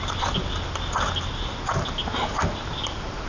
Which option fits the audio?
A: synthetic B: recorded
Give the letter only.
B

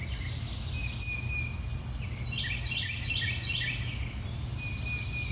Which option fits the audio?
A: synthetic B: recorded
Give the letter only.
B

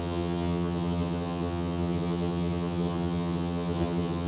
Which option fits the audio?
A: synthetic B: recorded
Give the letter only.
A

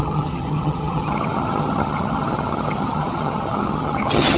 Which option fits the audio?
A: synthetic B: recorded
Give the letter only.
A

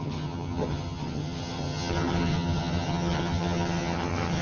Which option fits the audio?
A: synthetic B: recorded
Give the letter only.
A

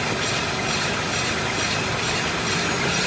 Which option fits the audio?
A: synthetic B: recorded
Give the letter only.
B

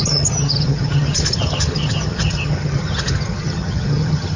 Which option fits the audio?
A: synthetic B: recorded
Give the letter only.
A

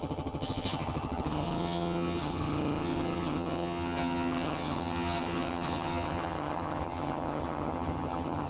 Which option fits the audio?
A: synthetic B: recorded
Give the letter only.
A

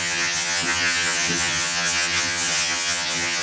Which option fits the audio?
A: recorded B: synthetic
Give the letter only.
B